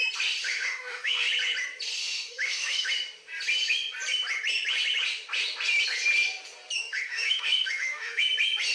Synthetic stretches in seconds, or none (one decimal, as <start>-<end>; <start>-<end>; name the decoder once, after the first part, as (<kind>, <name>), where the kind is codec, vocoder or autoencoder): 0.4-1.3 (autoencoder, DAC-VAE); 2.0-2.9; 6.8-8.2